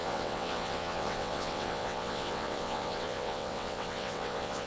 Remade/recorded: remade